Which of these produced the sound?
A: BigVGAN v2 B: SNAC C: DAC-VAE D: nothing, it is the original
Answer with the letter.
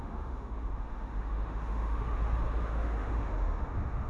C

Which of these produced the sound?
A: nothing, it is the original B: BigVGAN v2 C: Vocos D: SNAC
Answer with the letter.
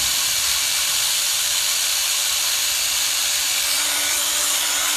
B